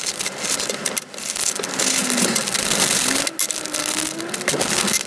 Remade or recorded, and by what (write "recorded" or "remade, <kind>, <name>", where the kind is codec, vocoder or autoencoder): recorded